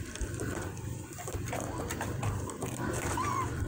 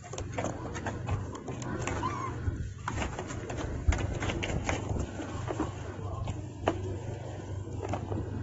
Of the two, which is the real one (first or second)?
second